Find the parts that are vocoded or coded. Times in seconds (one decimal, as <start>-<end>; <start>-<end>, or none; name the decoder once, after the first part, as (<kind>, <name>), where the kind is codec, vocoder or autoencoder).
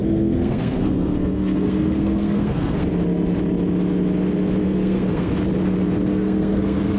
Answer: 0.0-2.9 (codec, SNAC); 4.6-5.3; 6.1-7.0